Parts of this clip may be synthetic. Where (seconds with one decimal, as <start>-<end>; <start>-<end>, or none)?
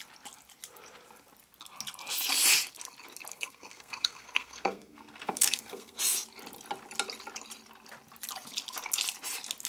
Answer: 3.3-6.0